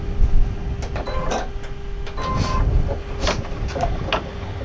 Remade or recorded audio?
recorded